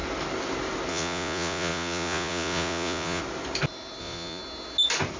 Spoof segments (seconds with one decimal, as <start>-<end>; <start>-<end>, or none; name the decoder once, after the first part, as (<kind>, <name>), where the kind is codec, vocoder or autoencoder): 0.9-3.2 (vocoder, Vocos); 4.0-4.4